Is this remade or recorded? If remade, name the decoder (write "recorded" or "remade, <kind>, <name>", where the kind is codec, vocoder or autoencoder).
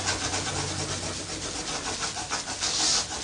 recorded